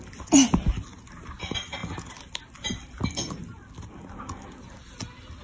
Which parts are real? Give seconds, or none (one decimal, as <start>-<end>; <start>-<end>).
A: 0.0-5.4